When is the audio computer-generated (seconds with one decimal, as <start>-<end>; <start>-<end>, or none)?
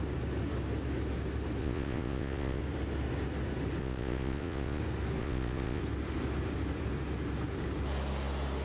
1.6-2.6; 3.8-4.8; 5.2-5.8